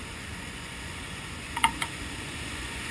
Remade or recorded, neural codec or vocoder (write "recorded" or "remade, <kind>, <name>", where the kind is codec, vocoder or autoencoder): remade, vocoder, Vocos